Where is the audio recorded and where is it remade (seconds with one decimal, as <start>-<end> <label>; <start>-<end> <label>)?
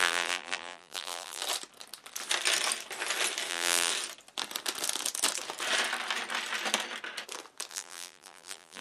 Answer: 0.0-1.4 remade; 1.4-3.5 recorded; 3.5-3.9 remade; 3.9-7.7 recorded; 7.7-8.8 remade